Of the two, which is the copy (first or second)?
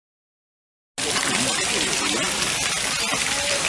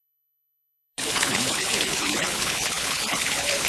second